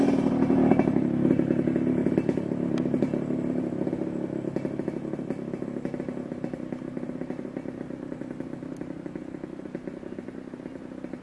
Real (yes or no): yes